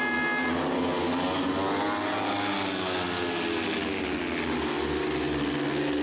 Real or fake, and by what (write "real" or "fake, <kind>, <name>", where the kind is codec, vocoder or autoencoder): real